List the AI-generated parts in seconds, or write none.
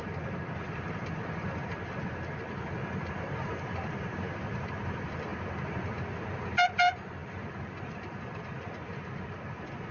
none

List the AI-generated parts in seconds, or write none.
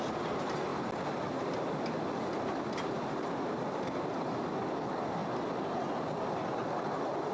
none